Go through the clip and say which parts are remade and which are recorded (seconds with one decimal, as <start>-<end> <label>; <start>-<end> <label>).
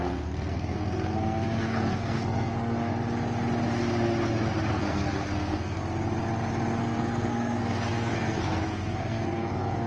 0.0-2.9 remade; 2.9-4.7 recorded; 4.7-5.8 remade; 5.8-6.8 recorded; 6.8-9.9 remade